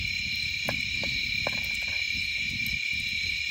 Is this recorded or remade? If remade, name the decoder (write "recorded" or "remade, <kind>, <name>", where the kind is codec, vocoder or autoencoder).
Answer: recorded